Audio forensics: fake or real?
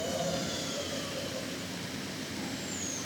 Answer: fake